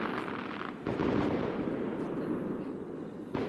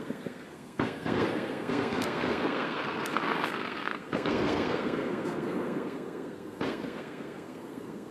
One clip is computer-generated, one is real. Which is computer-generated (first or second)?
second